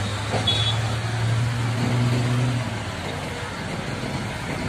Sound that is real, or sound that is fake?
real